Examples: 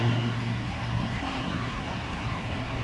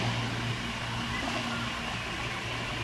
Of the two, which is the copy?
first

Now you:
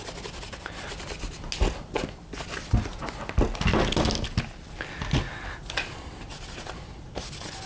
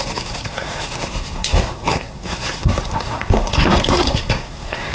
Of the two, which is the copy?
second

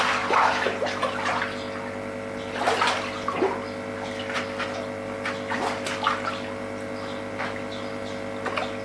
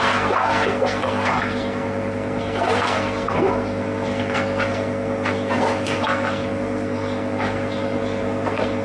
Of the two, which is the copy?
second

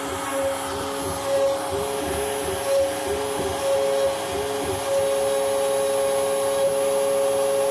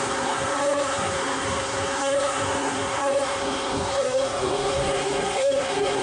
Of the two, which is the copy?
second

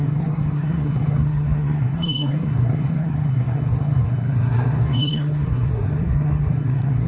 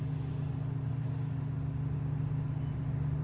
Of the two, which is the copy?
first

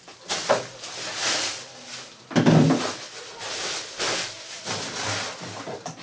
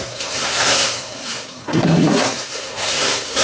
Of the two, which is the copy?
second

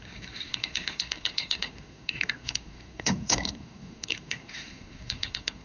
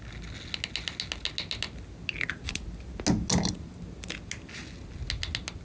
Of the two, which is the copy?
first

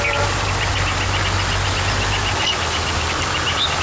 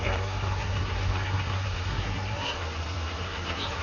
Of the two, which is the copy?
second